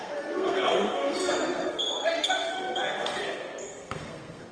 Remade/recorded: remade